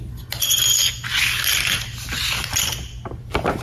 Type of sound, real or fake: real